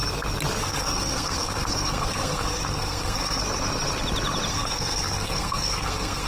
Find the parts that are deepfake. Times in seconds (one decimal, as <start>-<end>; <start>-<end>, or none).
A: 0.6-3.4; 4.5-6.3